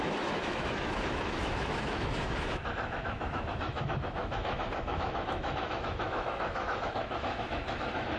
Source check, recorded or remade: remade